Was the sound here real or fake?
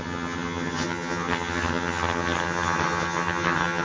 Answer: fake